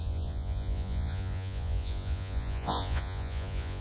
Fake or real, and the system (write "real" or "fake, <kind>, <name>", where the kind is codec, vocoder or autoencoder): fake, vocoder, Vocos